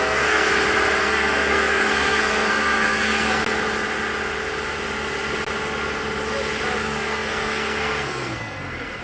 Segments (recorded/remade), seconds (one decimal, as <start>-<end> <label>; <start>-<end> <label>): 0.0-0.5 remade; 0.5-1.0 recorded; 1.0-3.4 remade; 3.4-6.8 recorded; 6.8-9.0 remade